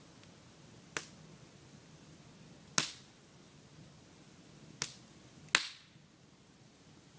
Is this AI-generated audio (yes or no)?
no